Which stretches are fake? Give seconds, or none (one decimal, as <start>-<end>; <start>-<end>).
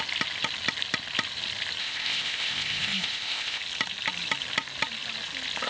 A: 1.8-3.6